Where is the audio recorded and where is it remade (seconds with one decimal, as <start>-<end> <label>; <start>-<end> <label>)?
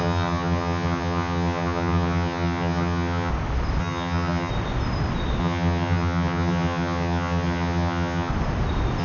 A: 0.0-3.3 remade; 3.3-3.8 recorded; 3.8-4.5 remade; 4.5-5.4 recorded; 5.4-8.3 remade; 8.3-9.0 recorded